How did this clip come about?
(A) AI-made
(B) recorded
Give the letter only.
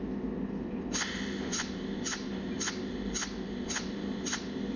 B